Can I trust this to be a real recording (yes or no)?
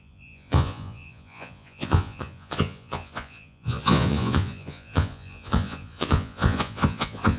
no